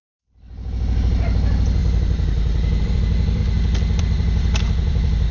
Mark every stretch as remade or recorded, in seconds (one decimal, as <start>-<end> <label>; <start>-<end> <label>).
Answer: 0.0-1.8 remade; 1.8-2.8 recorded; 2.8-3.4 remade; 3.4-4.0 recorded; 4.0-5.3 remade